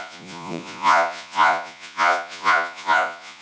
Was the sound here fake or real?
fake